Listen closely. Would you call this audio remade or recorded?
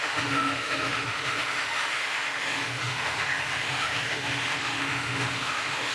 remade